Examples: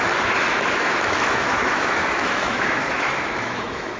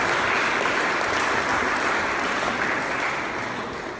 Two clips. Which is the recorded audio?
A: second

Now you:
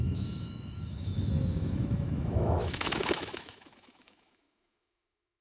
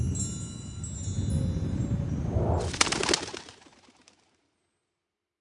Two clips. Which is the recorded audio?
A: second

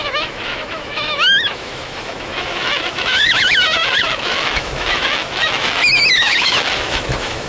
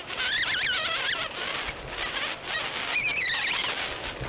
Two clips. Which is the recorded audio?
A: second